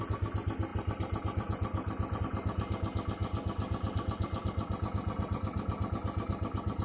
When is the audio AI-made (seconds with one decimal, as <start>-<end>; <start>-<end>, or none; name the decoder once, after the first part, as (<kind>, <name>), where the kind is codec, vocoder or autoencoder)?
0.7-2.2 (vocoder, BigVGAN v2); 3.2-5.9